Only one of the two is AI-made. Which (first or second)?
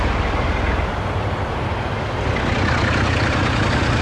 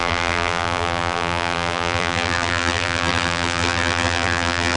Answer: second